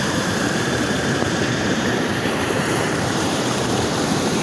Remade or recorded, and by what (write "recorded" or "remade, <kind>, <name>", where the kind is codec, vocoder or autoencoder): remade, vocoder, BigVGAN v2